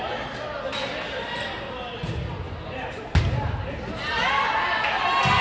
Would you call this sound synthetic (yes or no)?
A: no